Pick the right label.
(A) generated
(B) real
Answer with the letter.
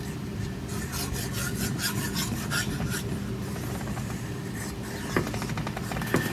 B